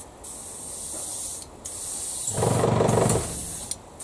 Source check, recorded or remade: recorded